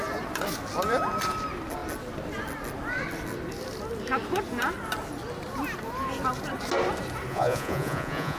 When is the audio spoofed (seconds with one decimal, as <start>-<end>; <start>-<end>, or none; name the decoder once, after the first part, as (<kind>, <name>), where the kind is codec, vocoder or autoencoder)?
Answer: 7.3-8.4 (vocoder, Vocos)